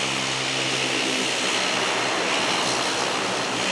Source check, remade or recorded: recorded